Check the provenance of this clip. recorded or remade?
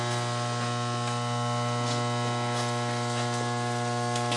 recorded